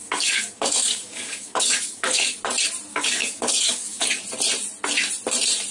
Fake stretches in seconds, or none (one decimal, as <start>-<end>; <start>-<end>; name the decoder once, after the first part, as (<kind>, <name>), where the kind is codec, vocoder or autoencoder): 0.0-2.4 (codec, DAC); 2.9-4.2